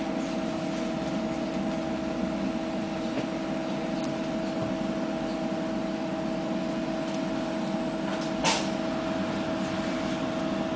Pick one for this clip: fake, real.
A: real